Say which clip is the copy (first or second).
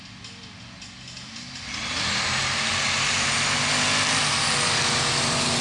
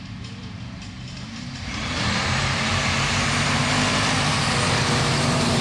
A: second